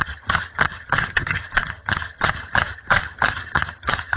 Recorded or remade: remade